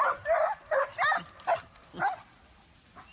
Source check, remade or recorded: recorded